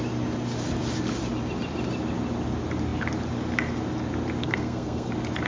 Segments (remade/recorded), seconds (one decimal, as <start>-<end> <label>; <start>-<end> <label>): 0.0-4.4 recorded; 4.4-5.1 remade; 5.1-5.5 recorded